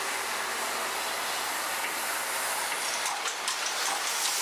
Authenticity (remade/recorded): recorded